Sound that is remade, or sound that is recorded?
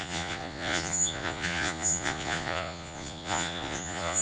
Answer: remade